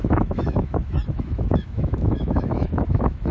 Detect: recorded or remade remade